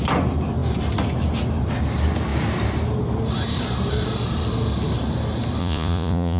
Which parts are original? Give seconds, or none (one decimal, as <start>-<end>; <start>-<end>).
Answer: 0.0-5.6

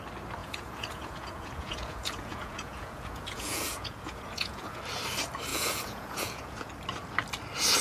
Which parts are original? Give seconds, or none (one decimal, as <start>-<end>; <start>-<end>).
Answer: 0.0-0.4; 4.8-5.5; 6.7-7.8

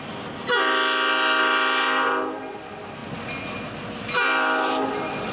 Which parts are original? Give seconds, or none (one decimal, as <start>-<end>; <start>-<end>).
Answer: 0.0-5.3

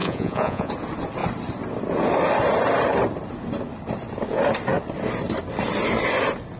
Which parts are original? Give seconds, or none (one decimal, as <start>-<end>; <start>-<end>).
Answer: 0.7-6.6